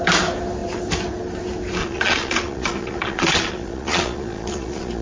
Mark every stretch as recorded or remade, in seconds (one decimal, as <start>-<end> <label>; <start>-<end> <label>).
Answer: 0.0-1.8 recorded; 1.8-5.0 remade